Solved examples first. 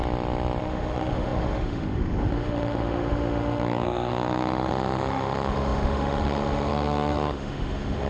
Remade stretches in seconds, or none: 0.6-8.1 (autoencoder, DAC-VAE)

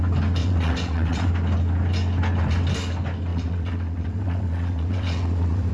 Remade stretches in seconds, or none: 0.4-1.3 (vocoder, WaveNeXt); 3.3-5.7

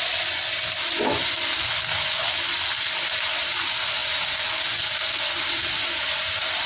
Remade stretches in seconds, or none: none

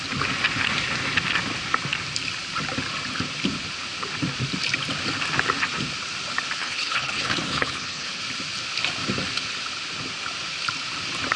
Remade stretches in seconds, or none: 6.6-8.2 (codec, HILCodec)